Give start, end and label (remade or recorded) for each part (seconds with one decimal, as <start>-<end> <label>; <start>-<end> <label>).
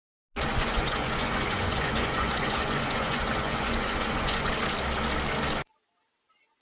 0.0-0.5 recorded; 0.5-4.5 remade; 4.5-6.6 recorded